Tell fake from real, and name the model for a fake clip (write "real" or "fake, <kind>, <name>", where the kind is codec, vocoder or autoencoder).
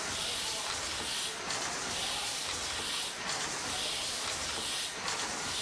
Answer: real